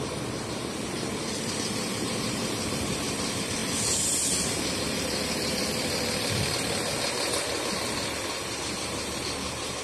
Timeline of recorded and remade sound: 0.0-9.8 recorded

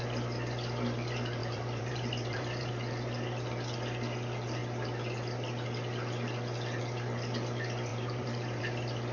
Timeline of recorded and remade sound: 0.0-1.4 recorded; 1.4-2.7 remade; 2.7-7.9 recorded; 7.9-8.6 remade; 8.6-9.1 recorded